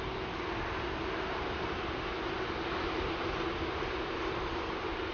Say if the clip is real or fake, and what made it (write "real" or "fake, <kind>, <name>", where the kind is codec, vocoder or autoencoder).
real